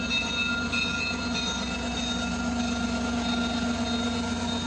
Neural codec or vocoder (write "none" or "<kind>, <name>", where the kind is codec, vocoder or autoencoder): none